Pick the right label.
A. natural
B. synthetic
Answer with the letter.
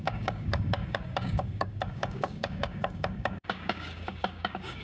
B